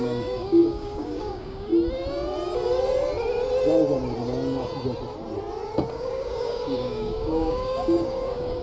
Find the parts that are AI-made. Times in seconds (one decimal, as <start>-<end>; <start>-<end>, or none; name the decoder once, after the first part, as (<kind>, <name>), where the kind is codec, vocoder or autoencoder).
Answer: 0.0-1.7 (codec, DAC); 5.9-8.6